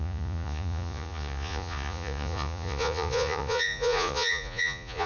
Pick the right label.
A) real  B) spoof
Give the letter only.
B